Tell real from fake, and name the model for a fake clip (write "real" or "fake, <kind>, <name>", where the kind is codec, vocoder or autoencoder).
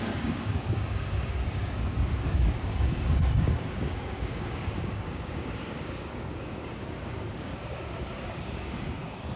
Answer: fake, codec, DAC